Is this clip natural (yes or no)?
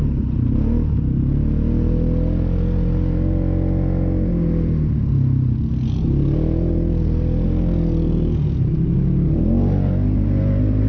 yes